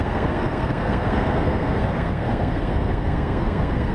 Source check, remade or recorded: remade